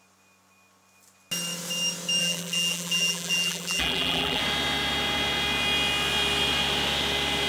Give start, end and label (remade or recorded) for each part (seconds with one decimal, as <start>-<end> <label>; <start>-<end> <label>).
0.0-2.2 recorded; 2.2-4.4 remade; 4.4-7.5 recorded